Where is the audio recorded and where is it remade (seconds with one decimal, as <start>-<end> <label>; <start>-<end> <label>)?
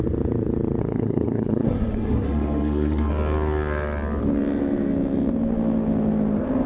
0.0-0.8 recorded; 0.8-3.1 remade; 3.1-6.7 recorded